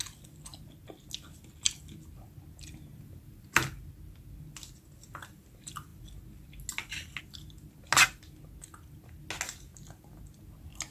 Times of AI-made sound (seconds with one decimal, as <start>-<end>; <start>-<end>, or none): 2.9-3.5